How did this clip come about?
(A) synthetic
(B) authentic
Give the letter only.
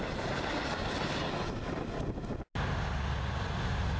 B